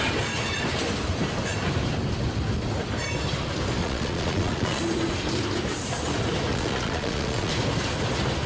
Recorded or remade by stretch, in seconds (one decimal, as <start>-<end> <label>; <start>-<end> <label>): 0.0-3.8 recorded; 3.8-4.8 remade; 4.8-6.5 recorded; 6.5-7.5 remade; 7.5-8.5 recorded